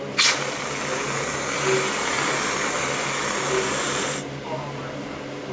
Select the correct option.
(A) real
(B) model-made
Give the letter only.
A